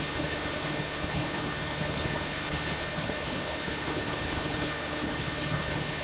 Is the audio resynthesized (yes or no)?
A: yes